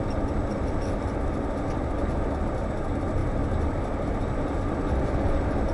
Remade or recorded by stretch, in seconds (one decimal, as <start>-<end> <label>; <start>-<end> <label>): 0.0-5.7 recorded